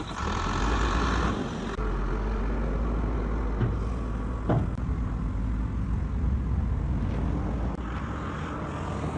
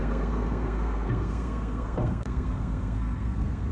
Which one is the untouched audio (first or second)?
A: first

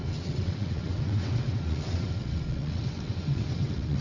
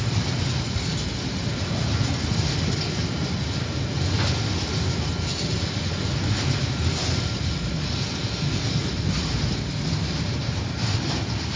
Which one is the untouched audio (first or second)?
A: second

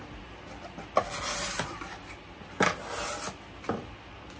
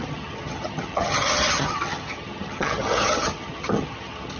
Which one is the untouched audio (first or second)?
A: first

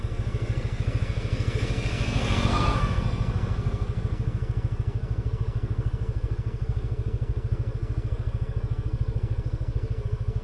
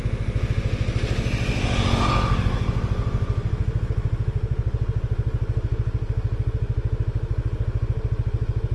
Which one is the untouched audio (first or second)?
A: second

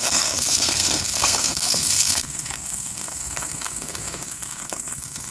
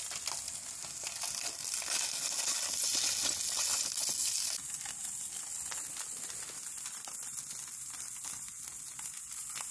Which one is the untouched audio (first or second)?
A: second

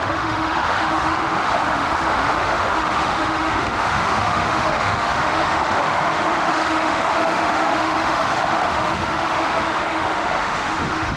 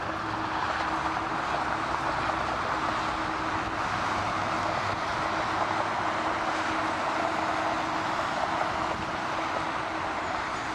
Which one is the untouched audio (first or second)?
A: second